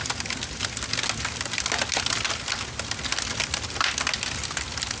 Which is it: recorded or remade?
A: recorded